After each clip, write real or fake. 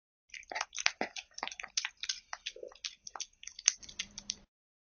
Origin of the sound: fake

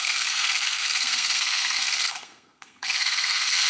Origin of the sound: fake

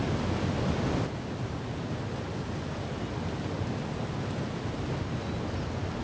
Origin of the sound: real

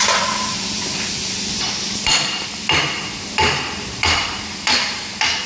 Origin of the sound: real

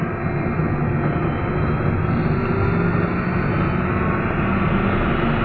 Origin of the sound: real